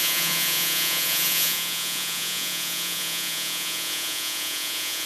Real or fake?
fake